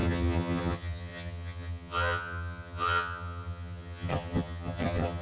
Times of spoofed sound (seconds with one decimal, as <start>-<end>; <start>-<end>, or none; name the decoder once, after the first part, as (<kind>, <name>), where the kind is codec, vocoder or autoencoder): 0.0-5.2 (vocoder, HiFi-GAN)